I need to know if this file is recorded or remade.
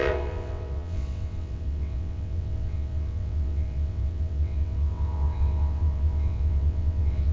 remade